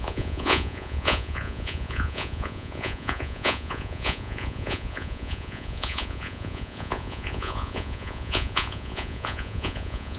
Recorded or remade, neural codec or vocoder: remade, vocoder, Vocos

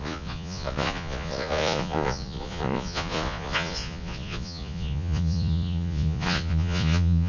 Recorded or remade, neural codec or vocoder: remade, vocoder, Vocos